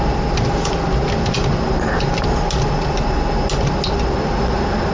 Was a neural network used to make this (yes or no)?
no